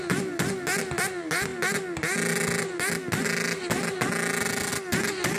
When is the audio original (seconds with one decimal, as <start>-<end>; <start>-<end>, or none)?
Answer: 0.0-5.4